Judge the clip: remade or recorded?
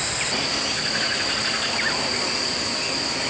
recorded